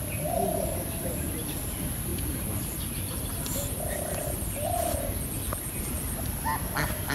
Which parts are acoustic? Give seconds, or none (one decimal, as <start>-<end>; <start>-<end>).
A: 0.0-7.1